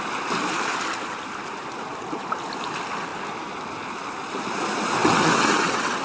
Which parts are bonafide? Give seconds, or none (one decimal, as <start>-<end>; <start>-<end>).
0.0-5.0